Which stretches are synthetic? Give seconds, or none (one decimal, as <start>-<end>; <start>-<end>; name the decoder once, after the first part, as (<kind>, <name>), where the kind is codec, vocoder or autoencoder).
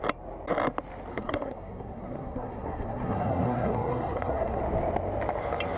1.1-4.6 (codec, SNAC)